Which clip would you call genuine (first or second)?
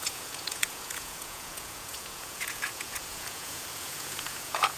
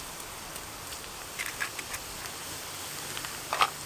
second